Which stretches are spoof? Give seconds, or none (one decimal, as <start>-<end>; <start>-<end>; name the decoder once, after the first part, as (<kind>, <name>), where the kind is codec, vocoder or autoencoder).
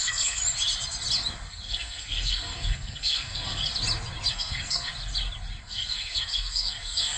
0.0-0.4 (codec, SNAC); 1.5-3.6; 4.3-4.9; 5.6-7.2